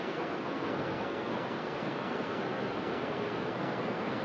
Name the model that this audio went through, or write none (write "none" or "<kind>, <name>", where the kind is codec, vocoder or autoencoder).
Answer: codec, SNAC